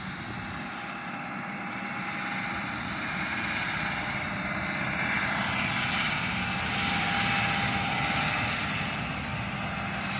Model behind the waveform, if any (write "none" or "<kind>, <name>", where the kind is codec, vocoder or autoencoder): none